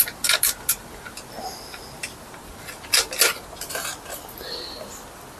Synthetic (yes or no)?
no